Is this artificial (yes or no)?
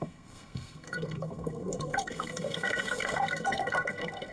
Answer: yes